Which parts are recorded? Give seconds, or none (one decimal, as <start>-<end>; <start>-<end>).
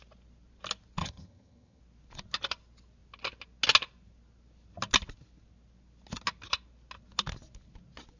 0.0-1.0; 1.8-8.2